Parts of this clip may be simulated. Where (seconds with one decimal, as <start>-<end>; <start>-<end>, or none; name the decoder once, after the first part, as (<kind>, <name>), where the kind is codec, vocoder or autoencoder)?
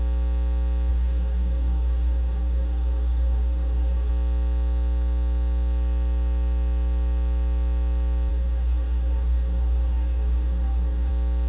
0.9-4.1 (codec, DAC); 8.3-11.1